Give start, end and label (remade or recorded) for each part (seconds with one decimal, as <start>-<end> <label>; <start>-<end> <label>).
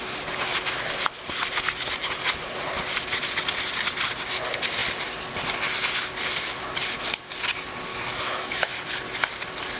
0.0-7.9 recorded; 7.9-8.7 remade; 8.7-9.8 recorded